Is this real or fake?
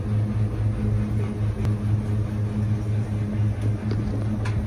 real